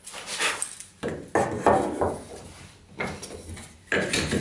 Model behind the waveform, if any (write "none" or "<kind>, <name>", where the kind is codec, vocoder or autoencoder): none